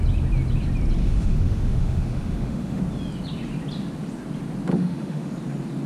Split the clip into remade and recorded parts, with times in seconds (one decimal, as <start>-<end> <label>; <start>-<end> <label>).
0.0-1.0 recorded; 1.0-2.8 remade; 2.8-4.7 recorded; 4.7-5.3 remade; 5.3-5.9 recorded